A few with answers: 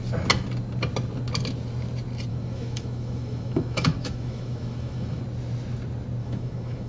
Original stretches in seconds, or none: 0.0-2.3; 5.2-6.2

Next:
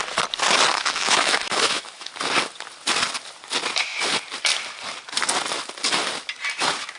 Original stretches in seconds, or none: 0.0-0.7; 2.1-7.0

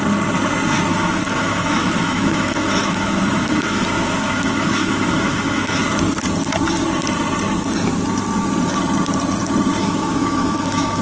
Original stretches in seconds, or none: 0.0-0.9; 5.8-9.8

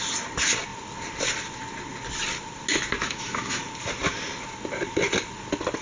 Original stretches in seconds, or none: 0.0-3.0; 3.6-5.8

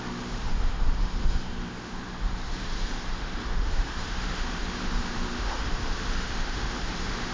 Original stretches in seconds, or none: none

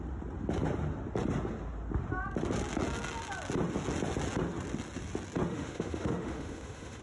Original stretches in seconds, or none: 0.0-5.5